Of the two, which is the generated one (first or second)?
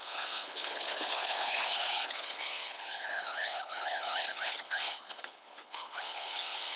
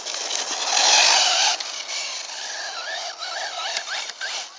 first